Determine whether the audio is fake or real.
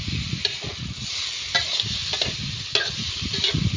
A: real